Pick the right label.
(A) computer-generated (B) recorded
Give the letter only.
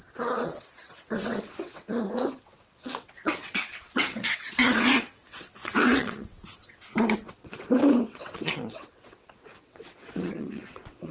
A